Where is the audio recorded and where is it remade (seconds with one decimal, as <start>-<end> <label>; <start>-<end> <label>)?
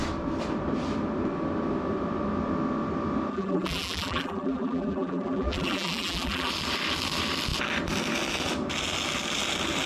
0.0-3.3 recorded; 3.3-6.5 remade; 6.5-9.9 recorded